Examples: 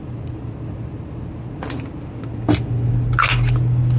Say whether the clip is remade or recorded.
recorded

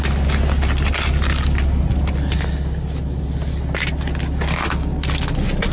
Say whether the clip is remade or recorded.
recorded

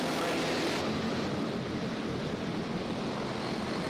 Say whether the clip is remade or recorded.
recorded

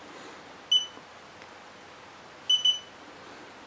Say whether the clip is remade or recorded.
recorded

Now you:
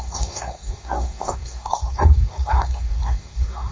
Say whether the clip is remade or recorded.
remade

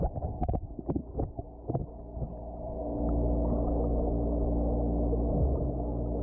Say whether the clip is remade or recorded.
recorded